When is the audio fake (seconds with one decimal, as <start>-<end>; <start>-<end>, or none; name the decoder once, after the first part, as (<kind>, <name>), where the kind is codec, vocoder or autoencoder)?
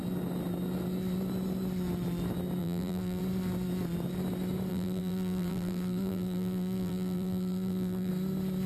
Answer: 2.6-3.2 (vocoder, BigVGAN v2); 4.7-8.1